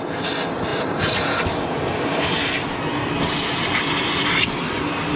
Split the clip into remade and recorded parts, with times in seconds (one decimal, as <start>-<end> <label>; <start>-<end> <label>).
0.0-5.2 recorded